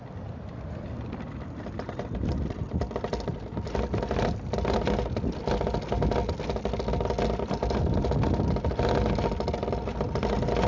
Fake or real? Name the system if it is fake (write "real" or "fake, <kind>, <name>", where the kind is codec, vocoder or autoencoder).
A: real